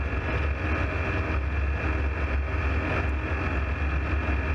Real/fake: real